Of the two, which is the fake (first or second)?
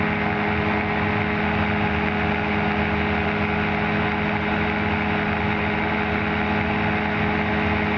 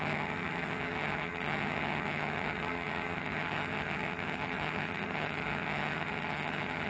second